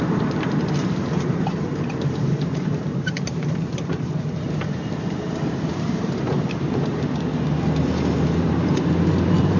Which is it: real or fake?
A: fake